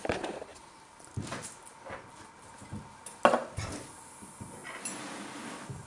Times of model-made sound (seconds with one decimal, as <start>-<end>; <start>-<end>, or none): none